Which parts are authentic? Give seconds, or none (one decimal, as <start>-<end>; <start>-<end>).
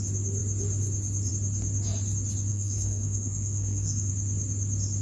0.0-2.5; 4.1-5.0